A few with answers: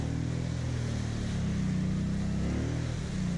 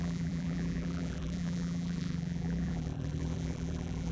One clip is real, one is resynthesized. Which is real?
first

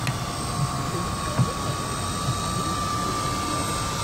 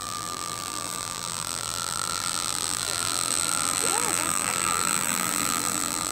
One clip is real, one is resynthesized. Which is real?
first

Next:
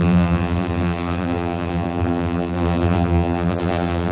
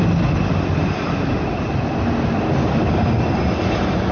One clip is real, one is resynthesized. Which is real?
second